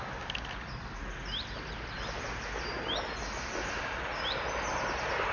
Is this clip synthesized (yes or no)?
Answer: no